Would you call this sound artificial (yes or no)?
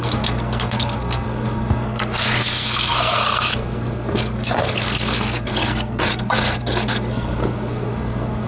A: yes